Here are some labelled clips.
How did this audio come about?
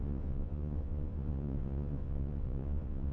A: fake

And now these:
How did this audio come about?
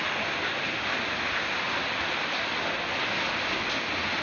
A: real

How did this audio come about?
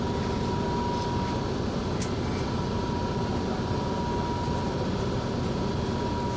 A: real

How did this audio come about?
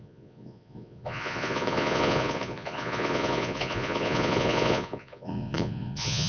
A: fake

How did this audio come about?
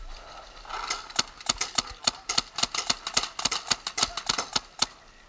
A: real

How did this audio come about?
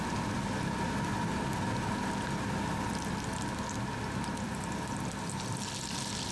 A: real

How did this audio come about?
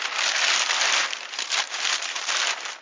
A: real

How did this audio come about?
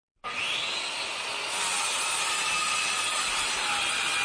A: real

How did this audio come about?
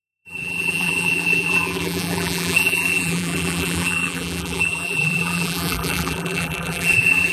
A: fake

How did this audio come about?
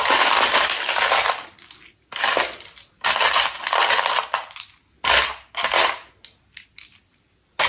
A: real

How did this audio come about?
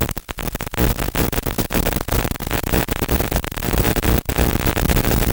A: real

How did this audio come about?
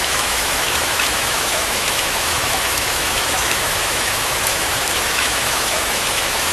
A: fake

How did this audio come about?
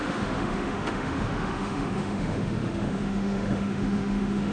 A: fake